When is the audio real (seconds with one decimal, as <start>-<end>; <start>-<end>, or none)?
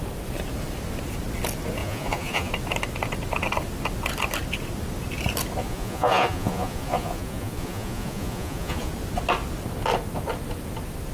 0.0-1.8; 2.5-5.6; 8.9-11.1